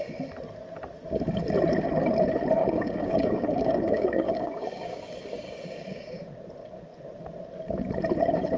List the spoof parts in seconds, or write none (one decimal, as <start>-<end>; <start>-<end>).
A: 2.6-6.2